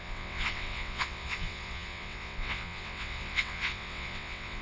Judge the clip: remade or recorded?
remade